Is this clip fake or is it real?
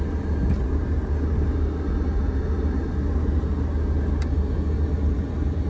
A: real